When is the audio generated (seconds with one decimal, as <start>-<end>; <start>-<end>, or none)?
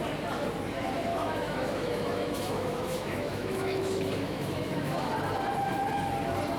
1.1-5.1